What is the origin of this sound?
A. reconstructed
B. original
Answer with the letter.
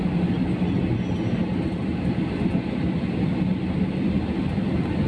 B